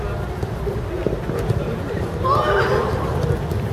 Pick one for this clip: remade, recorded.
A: recorded